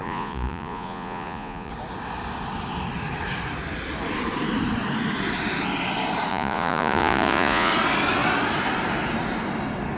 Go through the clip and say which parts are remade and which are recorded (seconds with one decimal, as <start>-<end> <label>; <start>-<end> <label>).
0.0-1.7 remade; 1.7-6.3 recorded; 6.3-7.7 remade; 7.7-10.0 recorded